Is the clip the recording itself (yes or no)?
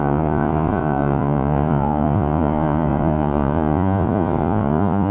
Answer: no